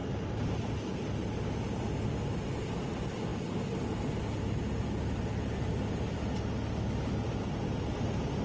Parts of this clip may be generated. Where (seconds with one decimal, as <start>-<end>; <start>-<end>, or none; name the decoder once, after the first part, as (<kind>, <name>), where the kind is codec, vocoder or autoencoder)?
0.0-0.7 (vocoder, BigVGAN v2)